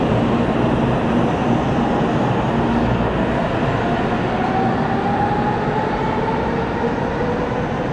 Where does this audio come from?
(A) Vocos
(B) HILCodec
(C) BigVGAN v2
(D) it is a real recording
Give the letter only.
D